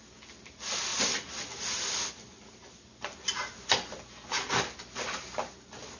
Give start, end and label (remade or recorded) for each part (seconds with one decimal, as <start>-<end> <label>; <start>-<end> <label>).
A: 0.0-6.0 recorded